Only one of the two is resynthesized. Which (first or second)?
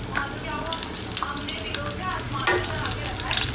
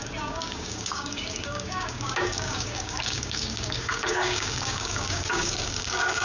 second